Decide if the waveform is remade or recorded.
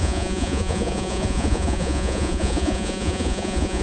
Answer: remade